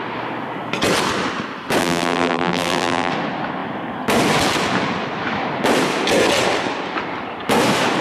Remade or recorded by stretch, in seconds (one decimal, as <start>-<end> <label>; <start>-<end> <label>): 0.0-1.8 recorded; 1.8-3.1 remade; 3.1-8.0 recorded